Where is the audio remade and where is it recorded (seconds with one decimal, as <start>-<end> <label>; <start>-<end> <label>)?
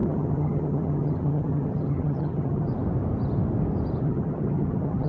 0.0-2.7 remade; 2.7-4.0 recorded; 4.0-5.1 remade